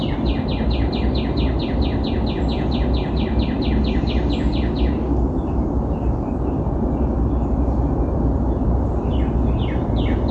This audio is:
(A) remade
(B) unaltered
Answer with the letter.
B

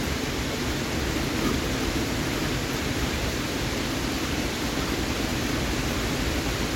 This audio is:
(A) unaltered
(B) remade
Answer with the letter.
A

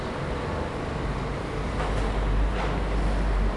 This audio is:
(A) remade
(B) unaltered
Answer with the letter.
B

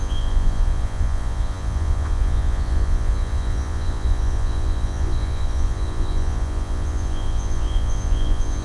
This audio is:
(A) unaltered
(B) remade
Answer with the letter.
B